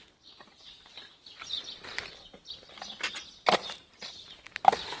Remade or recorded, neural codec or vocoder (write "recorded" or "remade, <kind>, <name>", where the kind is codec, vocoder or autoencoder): recorded